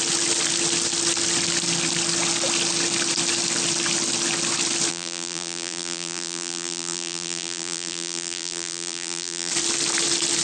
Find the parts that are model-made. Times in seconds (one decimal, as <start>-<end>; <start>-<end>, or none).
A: 4.9-9.5